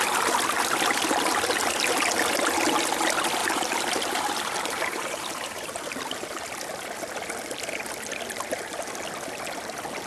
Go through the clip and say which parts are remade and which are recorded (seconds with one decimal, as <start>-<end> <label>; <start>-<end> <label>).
0.0-3.4 recorded; 3.4-6.4 remade; 6.4-10.1 recorded